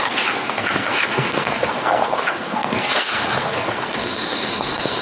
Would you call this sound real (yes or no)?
no